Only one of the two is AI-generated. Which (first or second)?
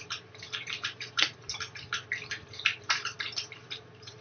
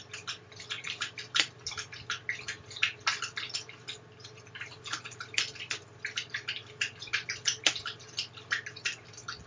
first